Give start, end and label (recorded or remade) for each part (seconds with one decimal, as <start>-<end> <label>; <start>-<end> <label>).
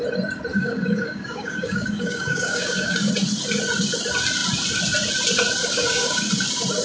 0.0-0.5 recorded; 0.5-3.1 remade; 3.1-5.6 recorded; 5.6-6.3 remade; 6.3-6.8 recorded